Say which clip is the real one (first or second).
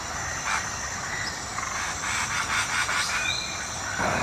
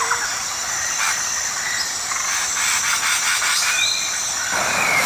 first